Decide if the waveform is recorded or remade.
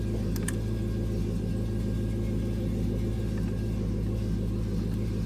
recorded